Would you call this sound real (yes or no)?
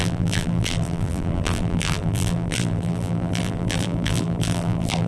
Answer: no